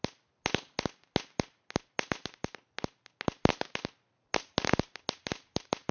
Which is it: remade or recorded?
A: recorded